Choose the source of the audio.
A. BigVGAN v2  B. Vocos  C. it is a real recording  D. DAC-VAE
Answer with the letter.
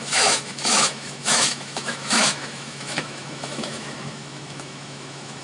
D